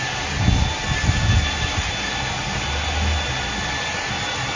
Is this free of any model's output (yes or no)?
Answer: yes